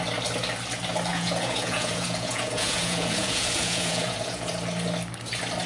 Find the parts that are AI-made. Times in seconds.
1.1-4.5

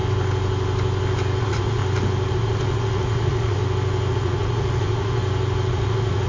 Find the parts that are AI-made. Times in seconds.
1.4-1.8; 2.3-3.6; 4.1-5.2; 5.7-6.3

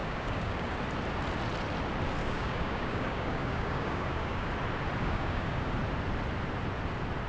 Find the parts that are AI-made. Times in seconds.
0.0-0.8; 2.2-4.5; 5.0-5.7

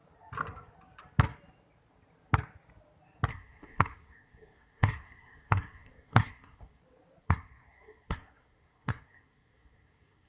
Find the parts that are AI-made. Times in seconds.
3.3-6.8; 7.2-10.3

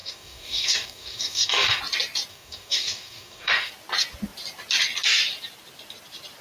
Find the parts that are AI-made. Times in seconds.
0.0-1.8; 2.3-3.7

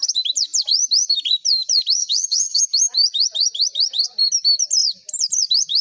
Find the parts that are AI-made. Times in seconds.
2.0-2.6